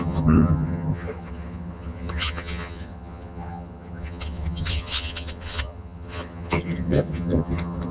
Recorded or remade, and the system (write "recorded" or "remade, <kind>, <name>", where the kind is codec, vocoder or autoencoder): remade, vocoder, HiFi-GAN